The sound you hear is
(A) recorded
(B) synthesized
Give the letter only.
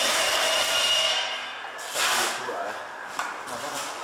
B